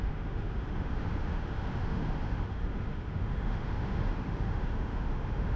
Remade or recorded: remade